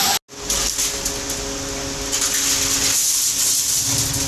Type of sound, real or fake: real